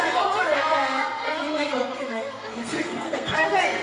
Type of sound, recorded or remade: remade